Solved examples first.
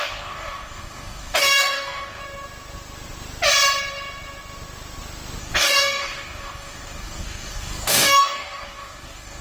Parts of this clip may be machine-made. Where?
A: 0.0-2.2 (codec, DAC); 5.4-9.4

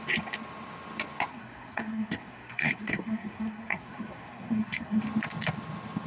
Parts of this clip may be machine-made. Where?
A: 1.3-5.0 (codec, SNAC)

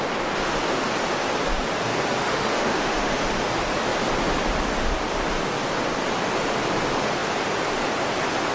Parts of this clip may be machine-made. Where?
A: 2.2-3.3 (autoencoder, DAC-VAE)

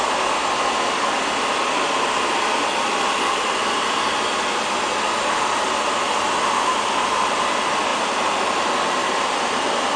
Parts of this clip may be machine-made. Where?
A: none

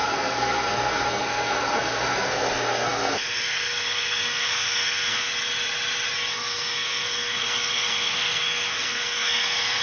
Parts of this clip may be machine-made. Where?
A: 0.0-5.3 (codec, SNAC); 6.3-9.8

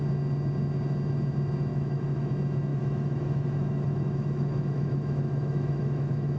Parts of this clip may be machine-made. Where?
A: 1.7-2.3 (autoencoder, DAC-VAE); 2.7-6.4